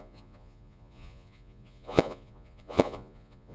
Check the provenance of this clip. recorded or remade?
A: remade